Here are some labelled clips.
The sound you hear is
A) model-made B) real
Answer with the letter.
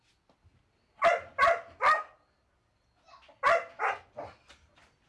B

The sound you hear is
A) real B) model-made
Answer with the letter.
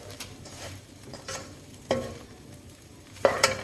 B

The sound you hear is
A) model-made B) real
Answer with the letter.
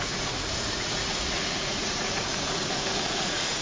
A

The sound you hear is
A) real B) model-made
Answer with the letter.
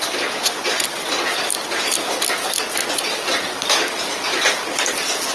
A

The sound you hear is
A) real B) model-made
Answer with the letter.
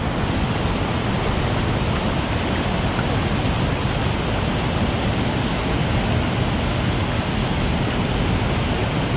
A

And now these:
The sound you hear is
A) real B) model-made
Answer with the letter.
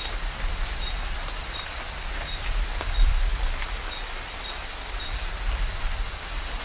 A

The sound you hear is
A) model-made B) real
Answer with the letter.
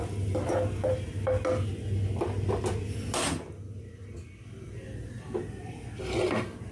B